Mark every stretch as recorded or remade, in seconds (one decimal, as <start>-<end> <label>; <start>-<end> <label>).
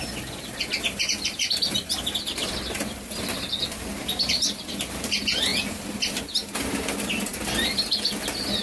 0.0-5.5 recorded; 5.5-6.2 remade; 6.2-8.6 recorded